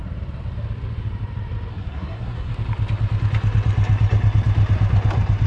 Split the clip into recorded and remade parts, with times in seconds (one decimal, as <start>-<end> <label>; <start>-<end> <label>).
0.0-1.7 recorded; 1.7-2.5 remade; 2.5-5.5 recorded